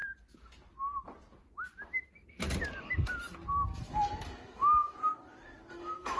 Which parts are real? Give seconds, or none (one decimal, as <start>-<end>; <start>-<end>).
0.0-3.7; 5.1-5.7